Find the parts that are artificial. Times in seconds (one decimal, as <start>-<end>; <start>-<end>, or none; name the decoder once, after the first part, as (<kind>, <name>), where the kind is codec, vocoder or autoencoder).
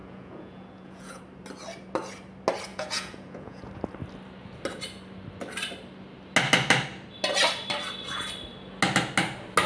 0.0-1.2 (vocoder, Vocos); 2.7-3.7